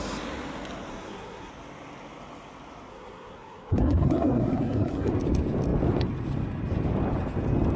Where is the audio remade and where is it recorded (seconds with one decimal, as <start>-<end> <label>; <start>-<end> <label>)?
0.0-0.9 recorded; 0.9-1.5 remade; 1.5-2.9 recorded; 2.9-5.1 remade; 5.1-7.8 recorded